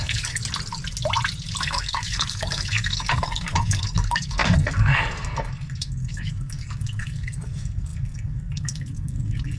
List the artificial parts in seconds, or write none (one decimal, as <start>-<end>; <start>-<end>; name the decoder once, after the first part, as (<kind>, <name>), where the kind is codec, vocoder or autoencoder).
0.0-0.4 (codec, SNAC); 1.6-9.6